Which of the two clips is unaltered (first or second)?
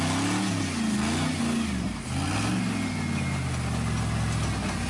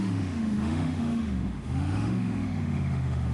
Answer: first